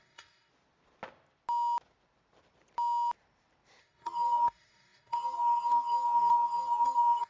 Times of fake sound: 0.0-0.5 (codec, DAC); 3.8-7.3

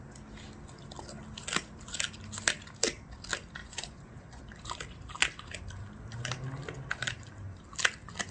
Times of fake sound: 3.6-4.4 (vocoder, Vocos)

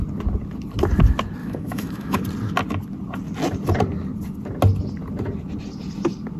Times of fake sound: 1.4-2.2 (autoencoder, DAC-VAE)

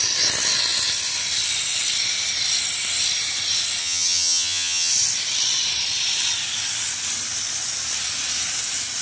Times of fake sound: 3.8-4.9 (vocoder, HiFi-GAN)

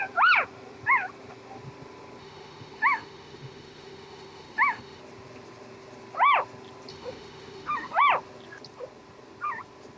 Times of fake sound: 2.2-5.0 (autoencoder, DAC-VAE); 6.9-8.0